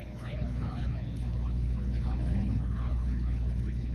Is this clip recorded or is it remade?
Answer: remade